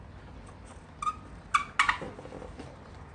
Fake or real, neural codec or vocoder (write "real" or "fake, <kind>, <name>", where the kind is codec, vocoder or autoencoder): real